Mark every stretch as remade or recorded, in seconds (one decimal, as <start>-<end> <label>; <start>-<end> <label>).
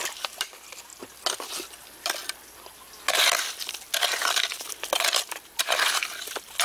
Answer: 0.0-0.9 remade; 0.9-1.5 recorded; 1.5-2.2 remade; 2.2-6.1 recorded; 6.1-6.6 remade